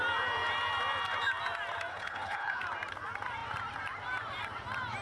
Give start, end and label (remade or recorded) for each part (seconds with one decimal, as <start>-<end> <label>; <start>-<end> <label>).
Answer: 0.0-1.9 recorded; 1.9-2.6 remade; 2.6-5.0 recorded